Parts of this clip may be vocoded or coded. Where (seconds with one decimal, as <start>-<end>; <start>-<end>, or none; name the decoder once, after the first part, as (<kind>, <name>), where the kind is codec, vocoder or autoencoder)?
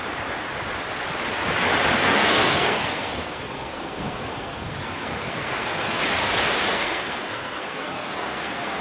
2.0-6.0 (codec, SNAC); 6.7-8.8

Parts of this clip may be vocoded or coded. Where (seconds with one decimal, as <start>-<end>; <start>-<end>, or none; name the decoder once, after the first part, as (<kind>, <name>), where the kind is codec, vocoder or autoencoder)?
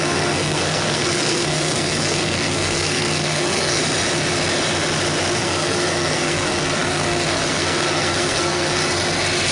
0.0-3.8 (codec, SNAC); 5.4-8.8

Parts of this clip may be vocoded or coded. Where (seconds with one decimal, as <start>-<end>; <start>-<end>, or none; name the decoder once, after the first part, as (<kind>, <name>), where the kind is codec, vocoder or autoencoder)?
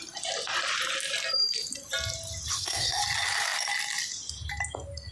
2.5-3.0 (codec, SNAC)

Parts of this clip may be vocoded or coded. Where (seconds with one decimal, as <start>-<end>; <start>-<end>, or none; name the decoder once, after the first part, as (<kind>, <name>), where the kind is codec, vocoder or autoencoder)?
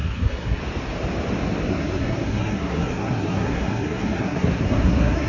0.0-0.6 (codec, SNAC); 1.7-5.3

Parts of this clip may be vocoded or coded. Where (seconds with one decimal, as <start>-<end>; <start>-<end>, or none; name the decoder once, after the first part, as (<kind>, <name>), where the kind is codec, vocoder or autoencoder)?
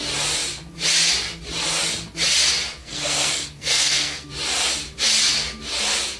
2.8-4.3 (codec, SNAC)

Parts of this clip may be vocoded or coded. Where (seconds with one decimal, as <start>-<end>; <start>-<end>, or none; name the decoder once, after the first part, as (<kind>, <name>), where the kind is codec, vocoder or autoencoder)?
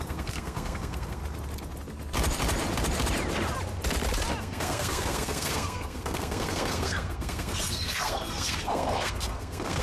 0.0-1.2 (codec, SNAC); 4.4-9.8